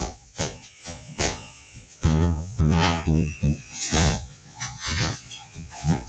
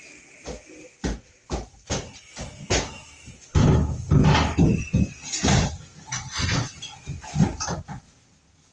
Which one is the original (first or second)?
second